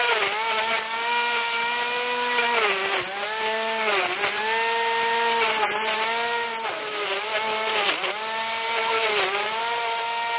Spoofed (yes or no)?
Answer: no